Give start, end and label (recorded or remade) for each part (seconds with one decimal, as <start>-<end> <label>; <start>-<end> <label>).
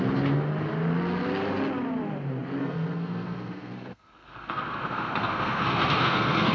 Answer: 0.0-2.6 recorded; 2.6-6.5 remade